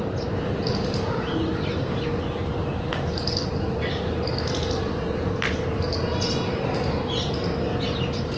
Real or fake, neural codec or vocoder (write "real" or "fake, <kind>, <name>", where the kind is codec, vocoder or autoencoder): real